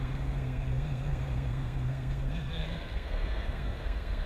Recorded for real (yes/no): no